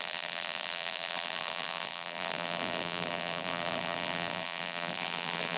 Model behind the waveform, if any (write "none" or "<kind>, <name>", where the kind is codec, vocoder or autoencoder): vocoder, BigVGAN v2